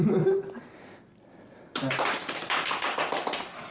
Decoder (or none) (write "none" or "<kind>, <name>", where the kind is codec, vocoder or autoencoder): none